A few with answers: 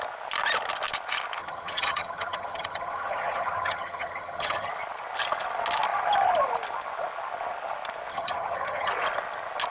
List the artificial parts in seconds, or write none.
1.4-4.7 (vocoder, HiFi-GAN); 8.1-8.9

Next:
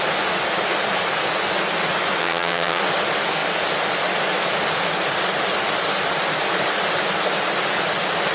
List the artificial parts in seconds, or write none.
2.2-2.8 (vocoder, HiFi-GAN)

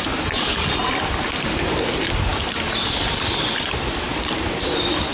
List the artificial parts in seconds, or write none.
none

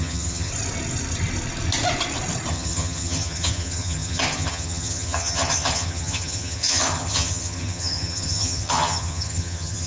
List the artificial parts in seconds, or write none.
0.0-0.5 (vocoder, HiFi-GAN); 2.5-9.9

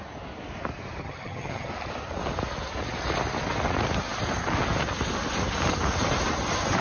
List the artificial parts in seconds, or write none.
1.0-1.7 (vocoder, HiFi-GAN)

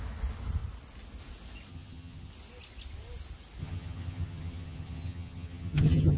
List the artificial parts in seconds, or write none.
1.7-2.3 (vocoder, HiFi-GAN); 3.6-6.2

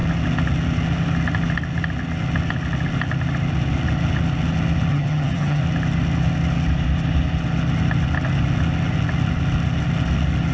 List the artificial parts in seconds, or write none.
4.9-5.6 (vocoder, HiFi-GAN)